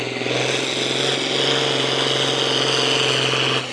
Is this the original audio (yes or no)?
yes